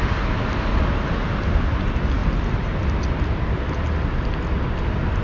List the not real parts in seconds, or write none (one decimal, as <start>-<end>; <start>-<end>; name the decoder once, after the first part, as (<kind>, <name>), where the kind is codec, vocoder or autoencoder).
none